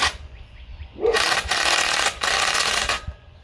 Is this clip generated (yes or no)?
yes